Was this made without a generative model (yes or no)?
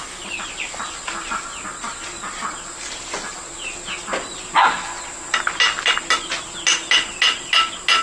yes